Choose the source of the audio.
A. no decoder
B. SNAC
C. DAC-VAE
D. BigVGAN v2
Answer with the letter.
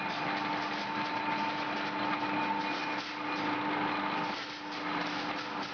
A